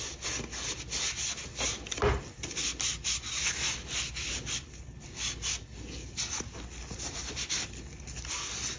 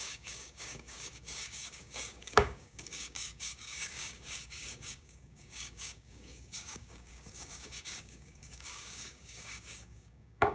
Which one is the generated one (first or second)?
second